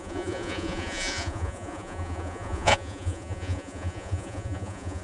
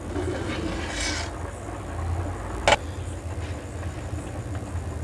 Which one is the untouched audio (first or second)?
second